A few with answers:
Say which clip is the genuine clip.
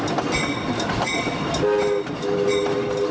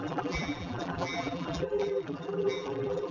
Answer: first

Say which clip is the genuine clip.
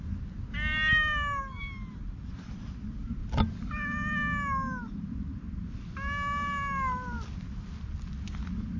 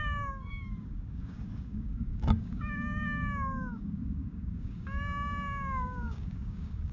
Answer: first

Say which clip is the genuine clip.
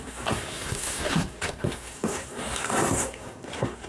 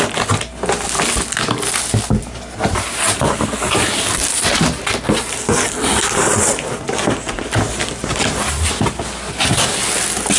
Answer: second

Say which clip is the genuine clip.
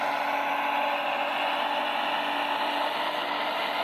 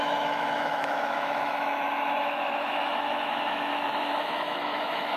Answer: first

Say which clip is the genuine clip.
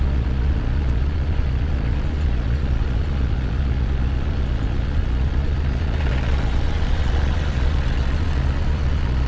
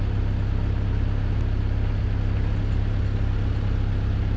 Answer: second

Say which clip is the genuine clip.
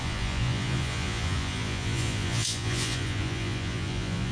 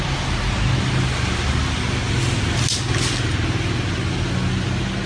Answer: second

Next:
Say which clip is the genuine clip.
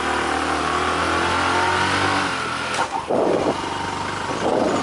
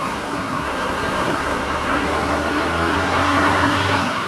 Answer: first